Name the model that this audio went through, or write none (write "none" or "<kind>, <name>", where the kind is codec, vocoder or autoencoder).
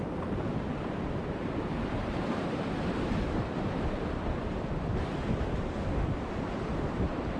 vocoder, BigVGAN v2